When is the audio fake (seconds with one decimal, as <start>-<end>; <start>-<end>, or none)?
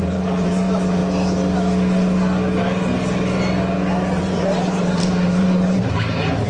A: 0.0-1.0; 4.2-6.5